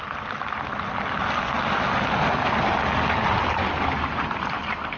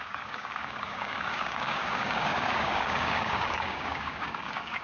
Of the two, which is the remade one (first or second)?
second